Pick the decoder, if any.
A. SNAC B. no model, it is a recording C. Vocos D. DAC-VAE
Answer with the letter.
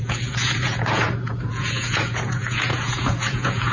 C